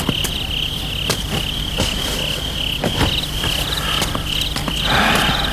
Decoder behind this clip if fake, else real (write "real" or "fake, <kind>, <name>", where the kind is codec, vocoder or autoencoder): real